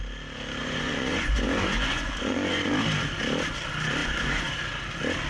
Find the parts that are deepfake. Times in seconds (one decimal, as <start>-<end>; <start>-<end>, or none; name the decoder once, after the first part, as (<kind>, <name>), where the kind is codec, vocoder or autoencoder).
0.6-2.7 (vocoder, Vocos); 4.0-4.5